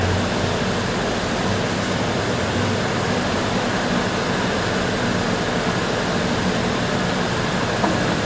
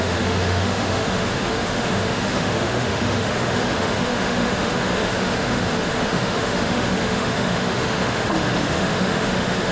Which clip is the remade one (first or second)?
second